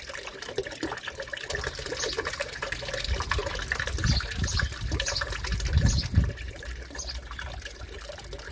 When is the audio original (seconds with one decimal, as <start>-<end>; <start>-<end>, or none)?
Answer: 0.0-8.5